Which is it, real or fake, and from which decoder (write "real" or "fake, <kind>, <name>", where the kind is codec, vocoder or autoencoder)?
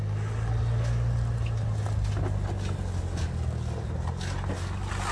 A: real